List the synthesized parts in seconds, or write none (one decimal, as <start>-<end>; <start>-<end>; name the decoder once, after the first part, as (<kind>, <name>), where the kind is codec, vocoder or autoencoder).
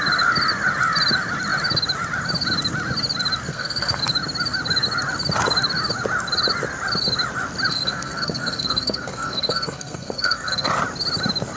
3.5-4.0 (codec, SNAC); 7.7-10.7